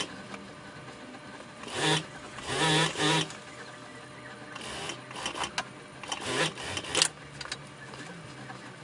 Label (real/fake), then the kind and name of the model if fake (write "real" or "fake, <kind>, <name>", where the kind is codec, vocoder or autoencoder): real